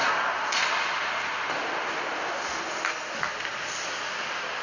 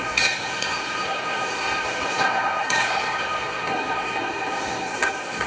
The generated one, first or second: second